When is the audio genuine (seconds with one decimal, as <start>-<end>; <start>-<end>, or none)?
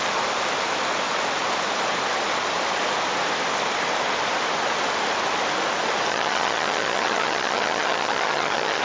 0.0-6.1